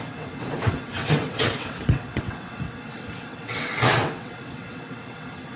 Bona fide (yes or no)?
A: no